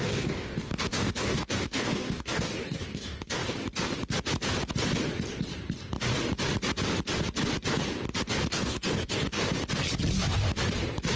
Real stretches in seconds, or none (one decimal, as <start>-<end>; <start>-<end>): 3.4-8.5; 9.4-11.2